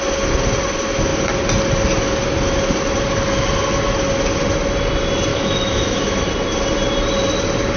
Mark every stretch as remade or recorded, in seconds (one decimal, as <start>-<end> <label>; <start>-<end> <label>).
0.0-5.3 recorded; 5.3-6.3 remade; 6.3-7.8 recorded